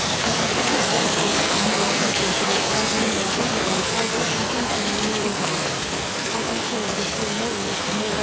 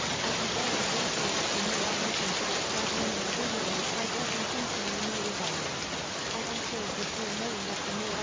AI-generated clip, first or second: first